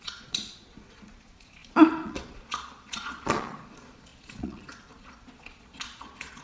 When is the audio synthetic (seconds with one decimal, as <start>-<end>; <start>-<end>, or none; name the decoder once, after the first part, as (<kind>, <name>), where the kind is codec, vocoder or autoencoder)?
0.0-6.4 (vocoder, Vocos)